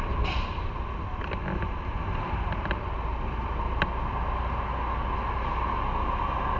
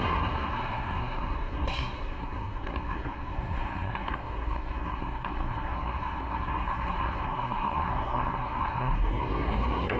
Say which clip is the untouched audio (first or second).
first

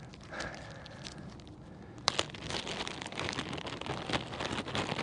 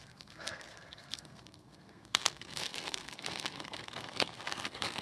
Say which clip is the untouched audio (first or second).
first